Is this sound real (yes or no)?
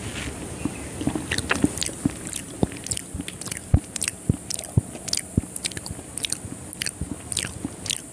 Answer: yes